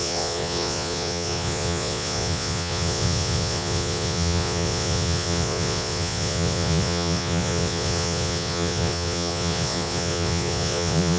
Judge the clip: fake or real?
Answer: fake